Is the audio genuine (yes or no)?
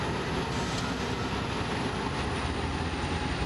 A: yes